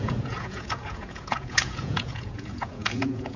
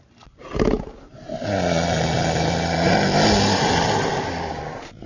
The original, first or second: second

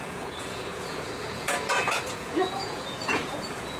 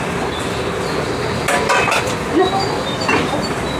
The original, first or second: second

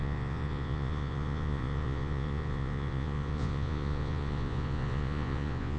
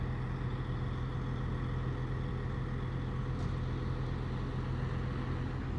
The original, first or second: second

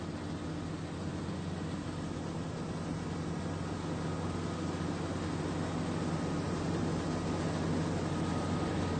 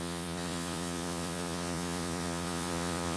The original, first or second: first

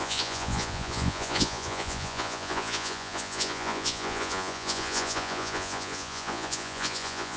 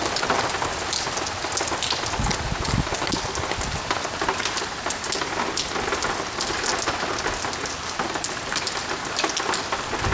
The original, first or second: second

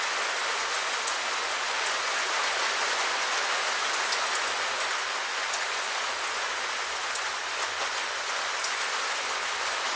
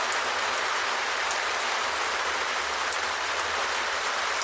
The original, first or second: second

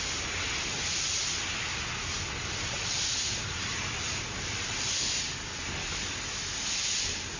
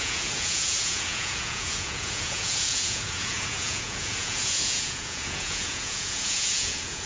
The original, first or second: first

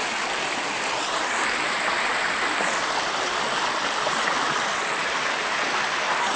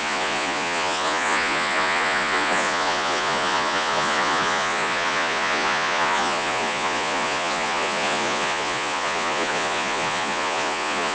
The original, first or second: first